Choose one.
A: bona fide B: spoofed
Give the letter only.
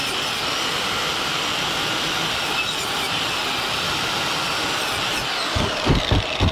A